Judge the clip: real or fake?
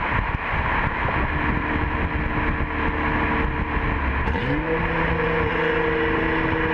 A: real